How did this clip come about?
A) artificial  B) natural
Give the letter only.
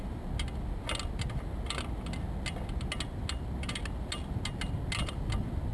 B